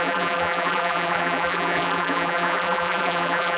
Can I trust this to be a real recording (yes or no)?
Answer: no